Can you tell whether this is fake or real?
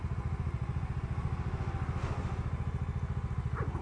real